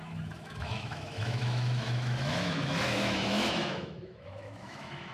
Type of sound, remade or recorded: remade